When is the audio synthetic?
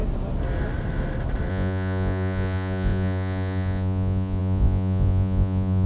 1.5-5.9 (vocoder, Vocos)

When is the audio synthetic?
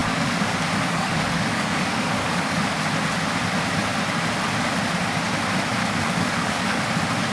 0.0-2.6 (codec, DAC); 5.8-6.8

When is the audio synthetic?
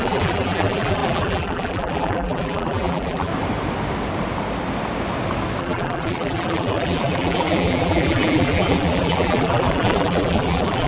0.0-3.3 (vocoder, BigVGAN v2); 5.6-10.9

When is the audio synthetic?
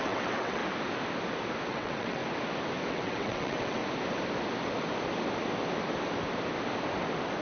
0.0-0.6 (vocoder, WaveNeXt); 1.7-2.2; 2.9-3.8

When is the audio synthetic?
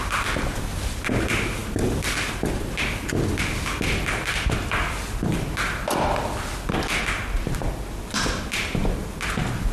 none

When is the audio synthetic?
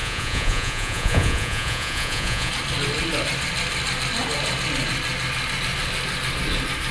0.0-2.5 (vocoder, Vocos)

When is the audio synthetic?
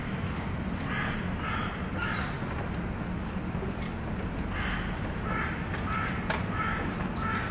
0.0-0.5 (autoencoder, DAC-VAE)